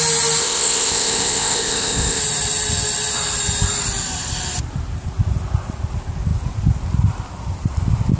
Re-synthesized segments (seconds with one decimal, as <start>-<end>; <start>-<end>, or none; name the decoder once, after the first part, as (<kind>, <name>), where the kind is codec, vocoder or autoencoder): 0.4-2.2 (codec, ZipCodec)